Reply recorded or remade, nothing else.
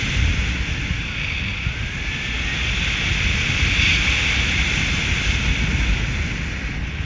recorded